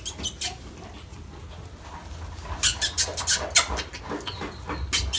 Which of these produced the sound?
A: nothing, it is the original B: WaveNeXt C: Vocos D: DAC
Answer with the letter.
A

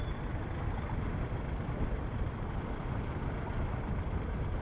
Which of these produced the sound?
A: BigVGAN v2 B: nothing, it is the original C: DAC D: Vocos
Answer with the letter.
A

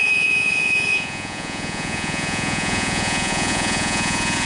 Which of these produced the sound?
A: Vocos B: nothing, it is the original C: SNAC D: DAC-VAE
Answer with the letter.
A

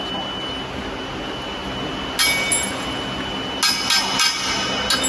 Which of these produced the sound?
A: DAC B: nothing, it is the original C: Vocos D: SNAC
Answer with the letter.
B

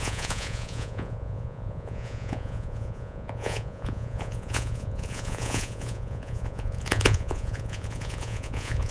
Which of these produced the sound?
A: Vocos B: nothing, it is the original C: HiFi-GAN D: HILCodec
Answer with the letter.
A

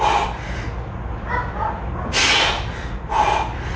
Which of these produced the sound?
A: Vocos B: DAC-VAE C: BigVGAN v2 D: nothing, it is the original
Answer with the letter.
D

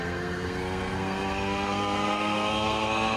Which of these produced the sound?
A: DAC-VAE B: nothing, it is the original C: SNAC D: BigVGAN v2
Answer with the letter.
C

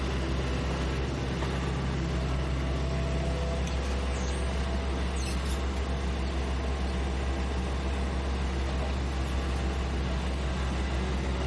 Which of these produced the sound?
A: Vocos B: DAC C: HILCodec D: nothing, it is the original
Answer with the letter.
D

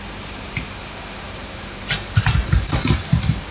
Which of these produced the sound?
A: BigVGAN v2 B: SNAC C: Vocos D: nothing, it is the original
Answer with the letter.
A